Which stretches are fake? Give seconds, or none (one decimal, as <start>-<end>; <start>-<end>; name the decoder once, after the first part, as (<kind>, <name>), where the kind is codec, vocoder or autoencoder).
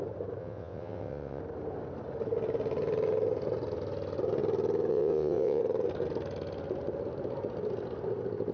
0.4-1.4 (vocoder, WaveNeXt); 4.9-5.6